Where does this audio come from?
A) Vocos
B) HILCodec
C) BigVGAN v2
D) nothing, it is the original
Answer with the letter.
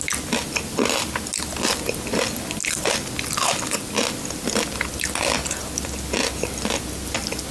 D